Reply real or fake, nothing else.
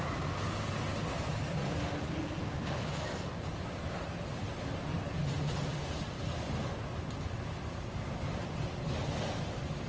real